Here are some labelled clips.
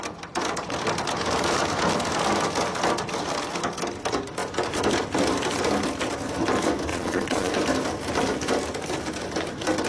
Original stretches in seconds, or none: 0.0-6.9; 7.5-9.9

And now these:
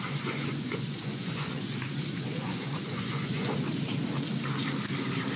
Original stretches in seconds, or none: 3.5-5.4

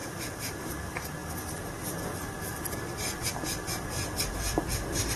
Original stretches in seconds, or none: 0.5-5.2